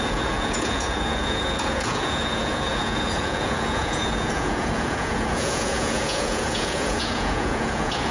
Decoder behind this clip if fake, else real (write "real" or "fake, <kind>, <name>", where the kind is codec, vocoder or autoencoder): fake, vocoder, Vocos